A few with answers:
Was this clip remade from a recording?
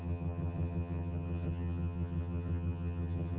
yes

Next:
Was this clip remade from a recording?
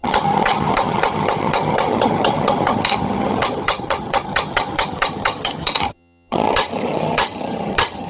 yes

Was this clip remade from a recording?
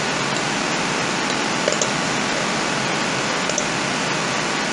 no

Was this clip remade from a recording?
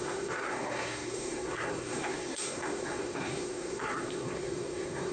yes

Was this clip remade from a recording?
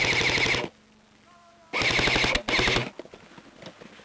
no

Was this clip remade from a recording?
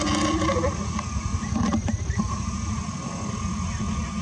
no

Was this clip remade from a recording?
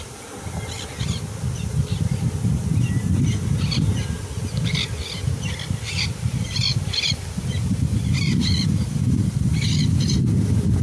no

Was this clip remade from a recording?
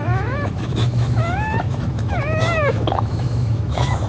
yes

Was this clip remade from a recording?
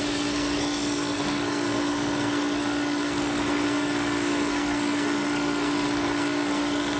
yes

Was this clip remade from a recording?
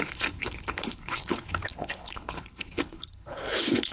yes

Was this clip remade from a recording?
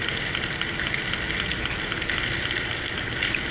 no